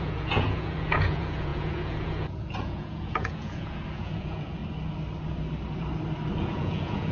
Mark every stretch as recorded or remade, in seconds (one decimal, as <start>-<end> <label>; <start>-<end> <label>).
0.0-4.6 remade; 4.6-6.4 recorded; 6.4-7.1 remade